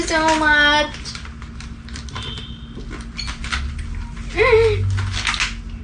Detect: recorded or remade recorded